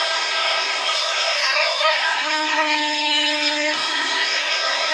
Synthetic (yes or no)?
yes